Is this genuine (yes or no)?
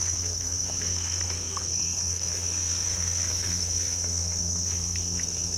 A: no